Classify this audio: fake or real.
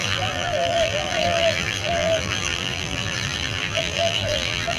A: fake